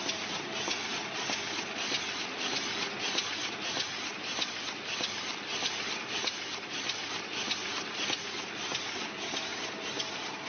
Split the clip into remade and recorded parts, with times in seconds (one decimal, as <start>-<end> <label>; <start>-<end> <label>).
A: 0.0-10.5 recorded